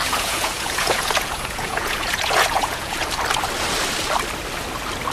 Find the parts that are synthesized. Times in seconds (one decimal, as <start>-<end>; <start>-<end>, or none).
0.0-3.1